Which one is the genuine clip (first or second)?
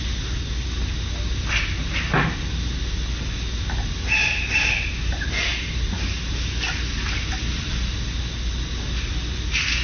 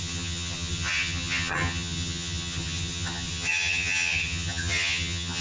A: first